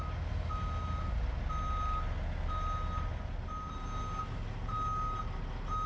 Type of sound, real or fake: real